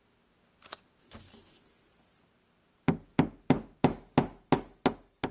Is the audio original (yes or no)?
yes